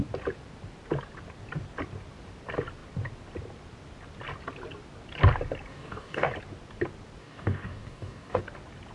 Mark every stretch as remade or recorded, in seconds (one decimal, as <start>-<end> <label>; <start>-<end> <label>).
0.0-5.7 recorded; 5.7-6.3 remade; 6.3-7.2 recorded; 7.2-8.4 remade; 8.4-8.9 recorded